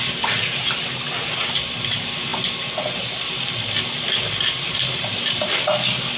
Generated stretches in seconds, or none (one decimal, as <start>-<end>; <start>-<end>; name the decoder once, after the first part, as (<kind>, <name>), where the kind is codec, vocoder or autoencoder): none